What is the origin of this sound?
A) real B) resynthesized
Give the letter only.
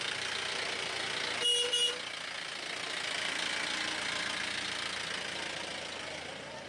A